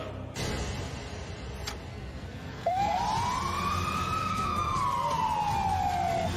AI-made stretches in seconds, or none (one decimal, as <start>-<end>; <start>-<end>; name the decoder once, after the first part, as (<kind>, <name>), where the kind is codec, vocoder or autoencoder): 1.9-3.0 (codec, SNAC); 4.2-4.8